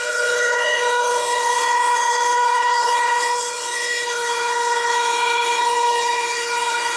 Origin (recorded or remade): remade